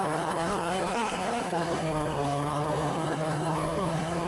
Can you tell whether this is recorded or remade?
remade